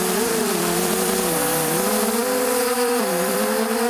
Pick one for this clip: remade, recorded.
remade